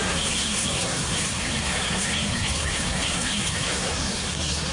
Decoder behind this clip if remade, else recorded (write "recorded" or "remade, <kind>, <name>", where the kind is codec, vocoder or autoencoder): remade, codec, SNAC